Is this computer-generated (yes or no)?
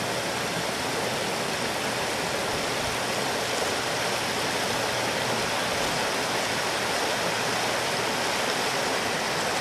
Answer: no